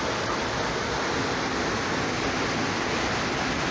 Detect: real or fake real